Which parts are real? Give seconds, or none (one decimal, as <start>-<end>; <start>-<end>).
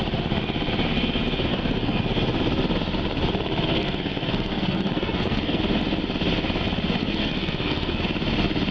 0.0-1.5; 2.0-3.7; 5.6-7.0; 8.0-8.7